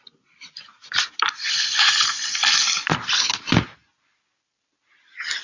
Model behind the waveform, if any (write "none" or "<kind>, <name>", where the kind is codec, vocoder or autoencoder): none